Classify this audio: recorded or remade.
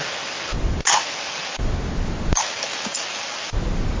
recorded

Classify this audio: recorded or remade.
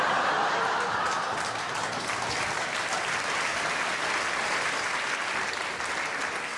recorded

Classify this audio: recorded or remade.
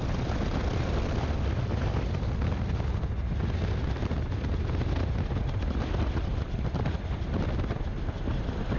recorded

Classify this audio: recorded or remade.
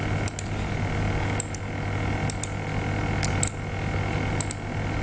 recorded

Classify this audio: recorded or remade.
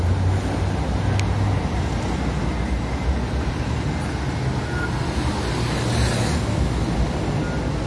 recorded